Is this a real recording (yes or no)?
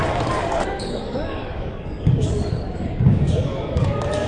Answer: no